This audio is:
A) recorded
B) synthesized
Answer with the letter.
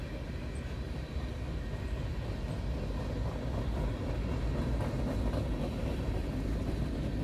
A